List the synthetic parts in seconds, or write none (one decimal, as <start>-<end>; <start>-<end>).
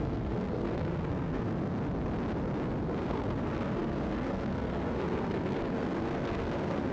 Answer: 0.0-1.7; 3.0-6.9